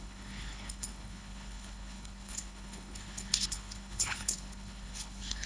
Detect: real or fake fake